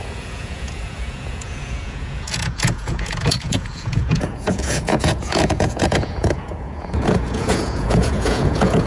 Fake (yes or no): yes